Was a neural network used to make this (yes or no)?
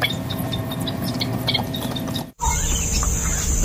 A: no